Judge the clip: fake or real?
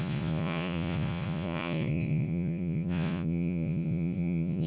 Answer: fake